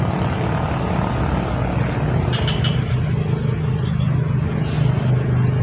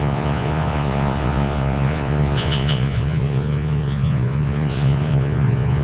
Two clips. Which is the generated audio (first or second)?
second